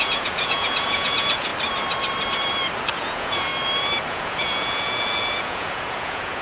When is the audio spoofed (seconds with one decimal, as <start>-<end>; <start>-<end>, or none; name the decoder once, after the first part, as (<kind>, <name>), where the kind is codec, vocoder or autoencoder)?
0.0-1.5 (vocoder, Vocos); 3.0-3.5; 4.1-6.4